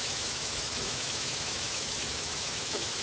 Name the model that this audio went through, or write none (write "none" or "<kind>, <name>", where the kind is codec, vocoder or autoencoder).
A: autoencoder, DAC-VAE